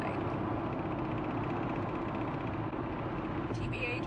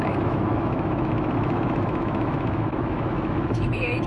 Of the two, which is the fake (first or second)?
second